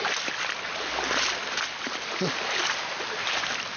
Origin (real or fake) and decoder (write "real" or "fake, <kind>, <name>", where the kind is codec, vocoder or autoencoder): real